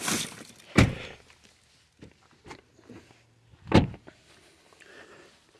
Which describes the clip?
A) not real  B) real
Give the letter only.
B